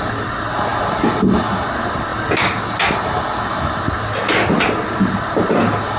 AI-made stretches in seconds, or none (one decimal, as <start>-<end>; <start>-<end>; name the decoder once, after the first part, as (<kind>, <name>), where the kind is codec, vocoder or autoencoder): none

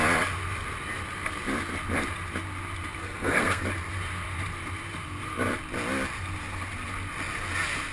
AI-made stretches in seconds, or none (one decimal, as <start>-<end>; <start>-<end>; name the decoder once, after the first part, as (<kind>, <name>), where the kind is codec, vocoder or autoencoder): 3.0-3.6 (codec, SNAC)

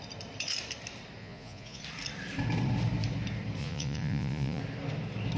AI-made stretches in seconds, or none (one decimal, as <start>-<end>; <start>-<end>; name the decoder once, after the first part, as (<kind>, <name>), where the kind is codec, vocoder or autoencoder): 1.2-1.8 (vocoder, Vocos); 3.6-4.6

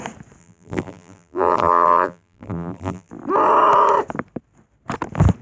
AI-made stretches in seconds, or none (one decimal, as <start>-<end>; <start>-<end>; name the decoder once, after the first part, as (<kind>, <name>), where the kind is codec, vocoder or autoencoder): 0.4-3.1 (vocoder, BigVGAN v2)

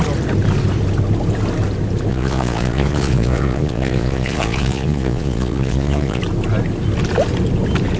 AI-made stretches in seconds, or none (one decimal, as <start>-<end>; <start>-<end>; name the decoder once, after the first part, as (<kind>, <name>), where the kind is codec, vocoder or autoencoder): 2.1-6.2 (vocoder, Vocos)